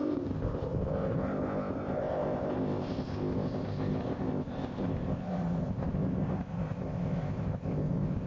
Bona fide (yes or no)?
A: no